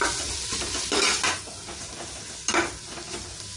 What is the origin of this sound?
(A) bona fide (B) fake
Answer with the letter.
A